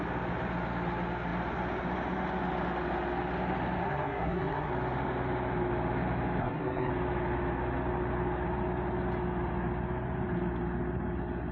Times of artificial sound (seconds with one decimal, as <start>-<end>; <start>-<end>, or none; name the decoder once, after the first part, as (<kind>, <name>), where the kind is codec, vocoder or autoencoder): 3.8-4.7 (codec, SNAC); 6.4-6.9